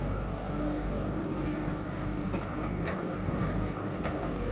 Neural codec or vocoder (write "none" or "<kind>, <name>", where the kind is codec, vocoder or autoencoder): codec, DAC